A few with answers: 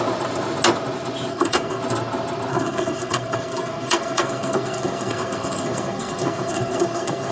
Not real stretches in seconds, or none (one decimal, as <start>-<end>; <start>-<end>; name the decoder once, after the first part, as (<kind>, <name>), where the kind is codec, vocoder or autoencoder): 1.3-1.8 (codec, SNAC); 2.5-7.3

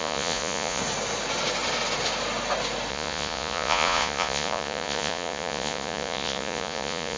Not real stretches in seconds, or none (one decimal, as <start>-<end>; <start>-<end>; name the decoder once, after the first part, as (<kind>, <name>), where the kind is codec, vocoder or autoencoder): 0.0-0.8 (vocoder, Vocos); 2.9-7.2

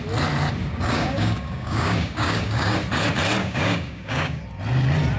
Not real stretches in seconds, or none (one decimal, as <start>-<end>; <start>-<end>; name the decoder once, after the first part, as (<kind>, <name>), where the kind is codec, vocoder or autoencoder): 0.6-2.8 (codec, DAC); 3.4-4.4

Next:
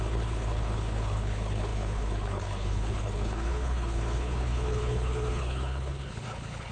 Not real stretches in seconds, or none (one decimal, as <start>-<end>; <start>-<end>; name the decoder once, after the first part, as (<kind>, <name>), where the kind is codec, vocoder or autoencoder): 0.0-6.7 (codec, HILCodec)